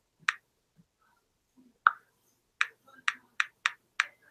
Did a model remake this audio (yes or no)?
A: no